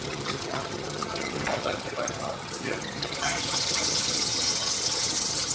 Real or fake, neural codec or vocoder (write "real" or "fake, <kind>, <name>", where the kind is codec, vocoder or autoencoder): fake, vocoder, HiFi-GAN